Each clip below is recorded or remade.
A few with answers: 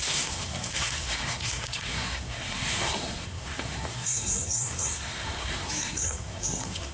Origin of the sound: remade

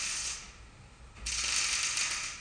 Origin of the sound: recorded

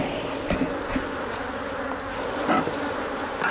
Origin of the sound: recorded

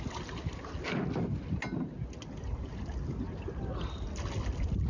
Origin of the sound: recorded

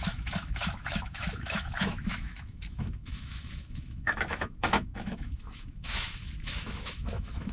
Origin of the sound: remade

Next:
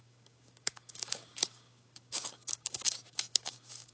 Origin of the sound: remade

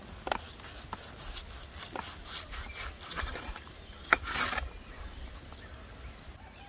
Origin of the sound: recorded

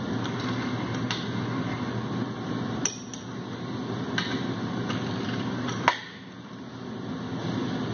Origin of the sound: recorded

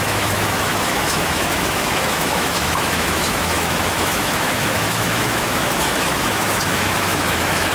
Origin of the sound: remade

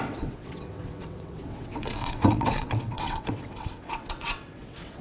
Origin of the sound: remade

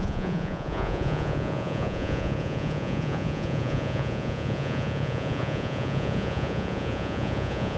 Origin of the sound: remade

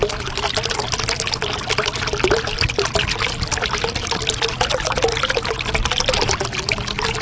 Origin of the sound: recorded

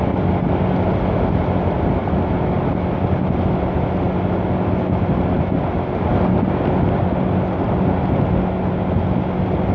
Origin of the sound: recorded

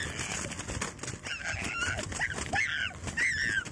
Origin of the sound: recorded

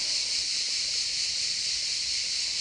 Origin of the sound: recorded